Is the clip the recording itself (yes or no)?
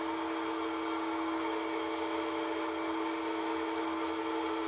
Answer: yes